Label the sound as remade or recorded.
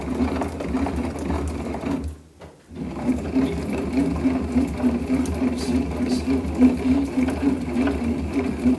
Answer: recorded